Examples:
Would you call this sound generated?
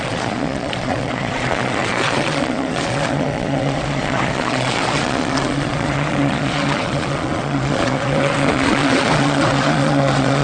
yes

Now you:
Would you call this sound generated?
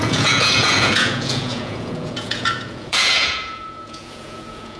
yes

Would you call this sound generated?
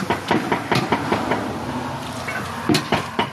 yes